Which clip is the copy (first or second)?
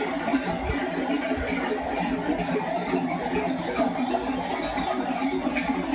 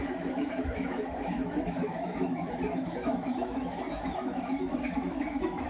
second